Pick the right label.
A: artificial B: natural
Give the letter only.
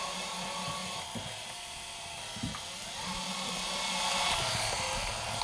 B